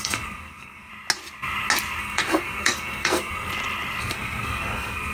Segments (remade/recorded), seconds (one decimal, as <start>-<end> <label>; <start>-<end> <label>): 0.0-0.9 remade; 0.9-2.0 recorded; 2.0-3.5 remade; 3.5-4.0 recorded; 4.0-5.1 remade